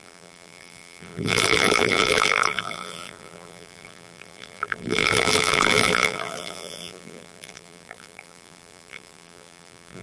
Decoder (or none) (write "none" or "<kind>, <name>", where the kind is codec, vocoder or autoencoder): vocoder, BigVGAN v2